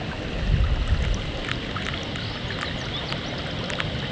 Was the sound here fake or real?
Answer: real